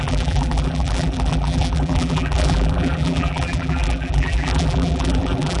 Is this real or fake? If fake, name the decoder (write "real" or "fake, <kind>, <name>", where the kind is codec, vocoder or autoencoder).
fake, vocoder, BigVGAN v2